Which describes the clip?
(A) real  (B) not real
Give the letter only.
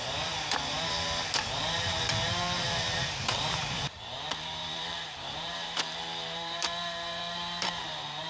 B